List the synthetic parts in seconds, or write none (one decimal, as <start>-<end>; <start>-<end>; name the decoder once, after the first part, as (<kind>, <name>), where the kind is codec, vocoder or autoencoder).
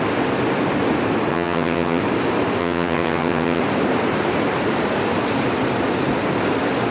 1.3-2.0 (vocoder, HiFi-GAN); 2.6-3.6